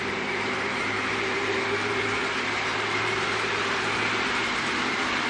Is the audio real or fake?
fake